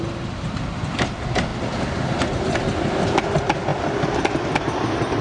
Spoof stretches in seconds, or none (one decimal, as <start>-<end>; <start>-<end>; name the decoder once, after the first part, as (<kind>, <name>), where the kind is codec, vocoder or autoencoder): none